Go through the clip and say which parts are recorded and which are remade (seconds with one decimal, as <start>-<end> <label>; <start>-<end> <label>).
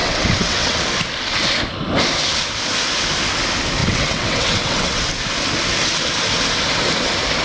0.0-0.8 remade; 0.8-3.8 recorded; 3.8-5.1 remade; 5.1-7.4 recorded